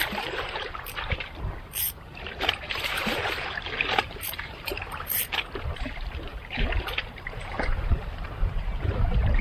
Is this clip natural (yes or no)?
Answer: no